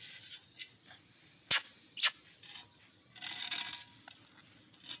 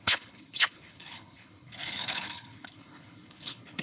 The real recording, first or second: first